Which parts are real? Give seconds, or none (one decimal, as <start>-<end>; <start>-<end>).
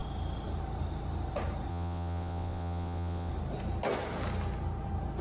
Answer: 0.0-1.7; 3.3-5.2